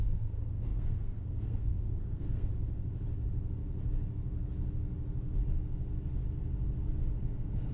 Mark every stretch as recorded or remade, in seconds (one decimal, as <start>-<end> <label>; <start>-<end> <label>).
0.0-2.5 remade; 2.5-7.1 recorded; 7.1-7.7 remade